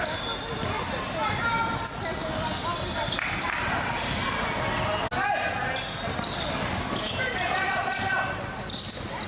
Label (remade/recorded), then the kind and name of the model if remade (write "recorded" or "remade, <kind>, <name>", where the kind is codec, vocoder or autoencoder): recorded